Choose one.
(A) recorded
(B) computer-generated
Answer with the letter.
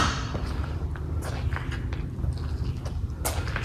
A